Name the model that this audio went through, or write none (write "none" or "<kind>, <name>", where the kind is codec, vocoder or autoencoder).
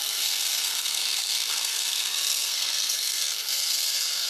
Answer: codec, SNAC